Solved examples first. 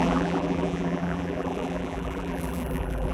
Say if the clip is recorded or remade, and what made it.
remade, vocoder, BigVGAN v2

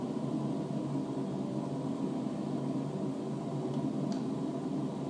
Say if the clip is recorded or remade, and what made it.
remade, vocoder, BigVGAN v2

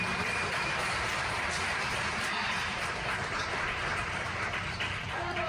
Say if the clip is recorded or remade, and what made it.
remade, vocoder, BigVGAN v2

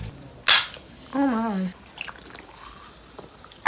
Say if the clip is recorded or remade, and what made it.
recorded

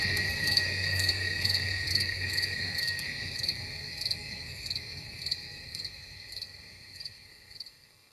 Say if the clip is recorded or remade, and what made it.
remade, codec, SNAC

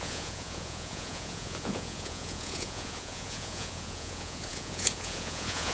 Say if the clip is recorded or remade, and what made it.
remade, vocoder, Vocos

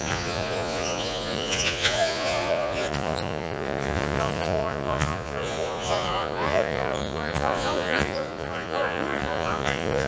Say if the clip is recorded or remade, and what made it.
remade, vocoder, Vocos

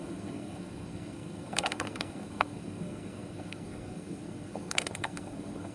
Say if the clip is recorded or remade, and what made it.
remade, codec, SNAC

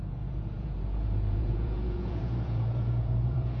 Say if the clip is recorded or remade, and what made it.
remade, vocoder, Vocos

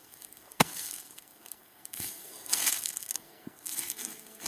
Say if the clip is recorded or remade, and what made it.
remade, codec, SNAC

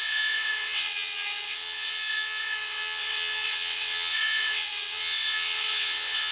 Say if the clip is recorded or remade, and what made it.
remade, vocoder, WaveNeXt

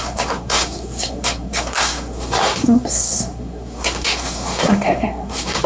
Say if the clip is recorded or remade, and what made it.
remade, codec, SNAC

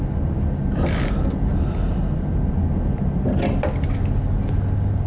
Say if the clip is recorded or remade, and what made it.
recorded